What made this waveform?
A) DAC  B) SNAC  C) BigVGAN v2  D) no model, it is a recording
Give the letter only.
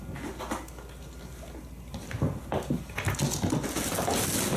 D